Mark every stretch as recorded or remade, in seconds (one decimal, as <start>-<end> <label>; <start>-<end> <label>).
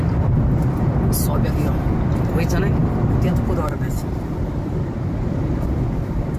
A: 0.0-6.4 recorded